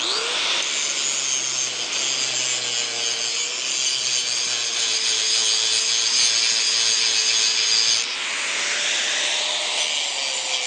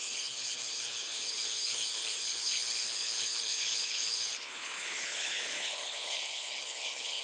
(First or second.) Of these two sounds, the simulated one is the second